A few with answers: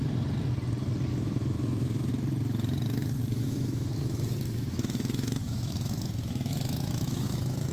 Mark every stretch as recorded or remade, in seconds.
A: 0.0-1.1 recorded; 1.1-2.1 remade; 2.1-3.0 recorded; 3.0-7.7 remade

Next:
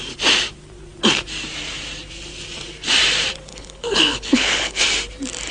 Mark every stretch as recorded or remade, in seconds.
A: 0.0-3.5 recorded; 3.5-4.8 remade; 4.8-5.5 recorded

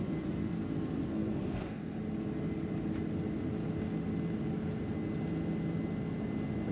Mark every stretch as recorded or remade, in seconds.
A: 0.0-1.1 recorded; 1.1-2.0 remade; 2.0-6.7 recorded

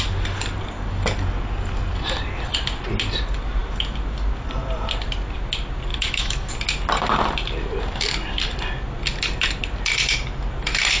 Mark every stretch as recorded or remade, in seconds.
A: 0.0-5.9 recorded; 5.9-6.5 remade; 6.5-11.0 recorded

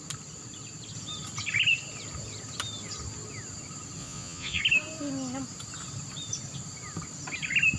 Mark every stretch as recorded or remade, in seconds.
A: 0.0-4.0 recorded; 4.0-4.6 remade; 4.6-7.8 recorded

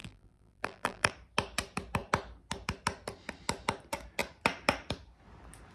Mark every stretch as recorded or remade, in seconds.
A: 0.0-1.1 remade; 1.1-5.7 recorded